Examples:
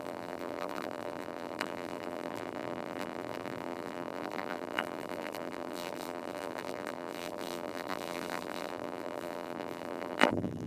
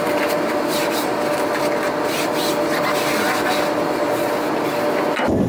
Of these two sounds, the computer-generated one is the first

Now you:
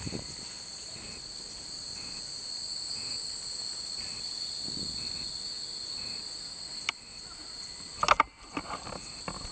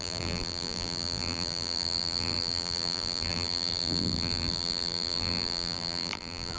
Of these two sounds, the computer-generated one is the second